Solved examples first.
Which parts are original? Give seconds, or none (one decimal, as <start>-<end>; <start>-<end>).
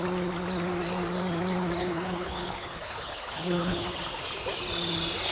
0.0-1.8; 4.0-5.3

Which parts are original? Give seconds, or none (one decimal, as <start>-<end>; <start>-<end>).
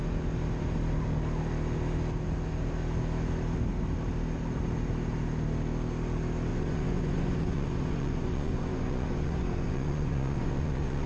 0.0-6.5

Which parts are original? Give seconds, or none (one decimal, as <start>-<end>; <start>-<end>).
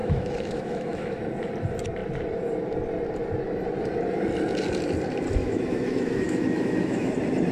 1.2-5.4; 7.1-7.5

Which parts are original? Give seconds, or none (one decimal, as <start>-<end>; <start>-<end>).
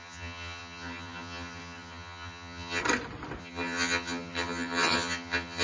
2.8-3.4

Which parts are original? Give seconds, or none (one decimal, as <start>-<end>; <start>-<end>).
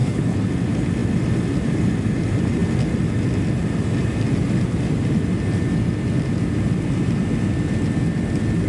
0.5-8.7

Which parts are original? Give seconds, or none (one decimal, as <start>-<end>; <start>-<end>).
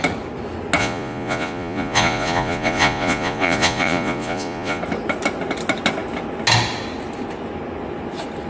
0.0-0.8; 4.8-8.5